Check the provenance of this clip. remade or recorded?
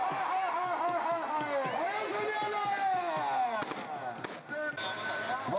recorded